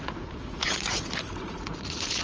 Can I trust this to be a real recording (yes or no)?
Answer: no